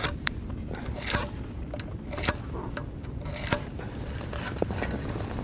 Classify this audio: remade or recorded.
remade